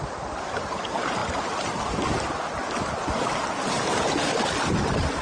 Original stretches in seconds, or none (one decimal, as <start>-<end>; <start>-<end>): 0.0-1.2; 4.3-5.2